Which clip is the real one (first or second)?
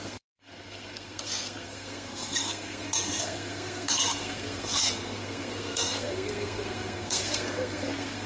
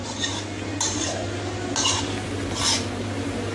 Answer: second